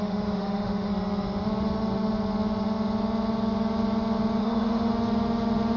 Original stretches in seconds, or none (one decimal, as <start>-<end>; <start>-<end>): 0.9-4.4; 4.9-5.8

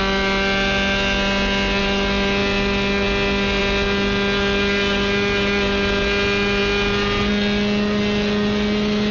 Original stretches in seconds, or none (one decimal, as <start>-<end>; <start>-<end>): 0.0-9.1

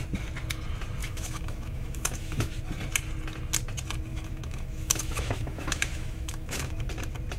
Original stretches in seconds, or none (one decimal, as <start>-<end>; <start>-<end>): 0.0-1.0; 2.5-4.1; 6.9-7.4